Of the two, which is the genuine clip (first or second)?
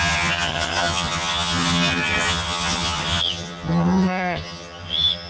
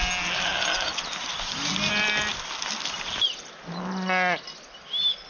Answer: second